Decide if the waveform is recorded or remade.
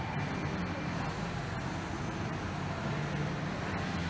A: recorded